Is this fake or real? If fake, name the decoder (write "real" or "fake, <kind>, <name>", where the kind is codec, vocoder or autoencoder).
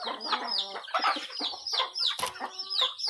real